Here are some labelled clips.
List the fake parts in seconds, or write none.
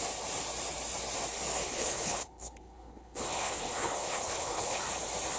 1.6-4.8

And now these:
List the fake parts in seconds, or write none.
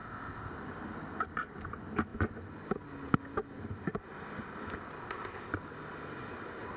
0.0-0.5; 5.0-5.5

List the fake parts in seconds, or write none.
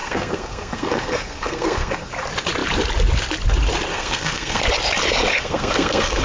0.0-2.1; 3.9-4.6; 5.3-6.2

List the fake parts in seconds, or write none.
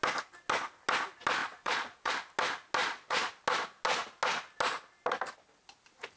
1.4-2.1; 2.8-3.3